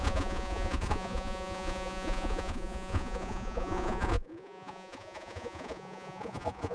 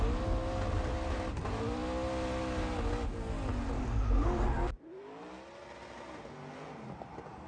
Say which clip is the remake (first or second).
first